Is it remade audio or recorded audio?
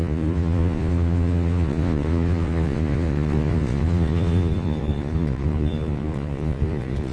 remade